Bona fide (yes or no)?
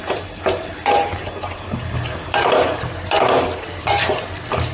no